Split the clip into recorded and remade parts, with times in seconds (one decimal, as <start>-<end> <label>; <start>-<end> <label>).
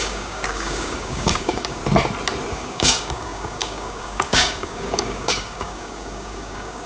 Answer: 0.0-1.8 remade; 1.8-2.5 recorded; 2.5-6.9 remade